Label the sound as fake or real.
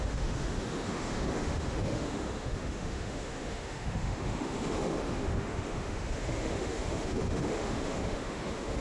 fake